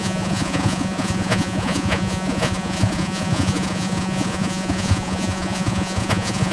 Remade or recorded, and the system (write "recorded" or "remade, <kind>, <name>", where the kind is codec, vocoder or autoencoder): remade, vocoder, Vocos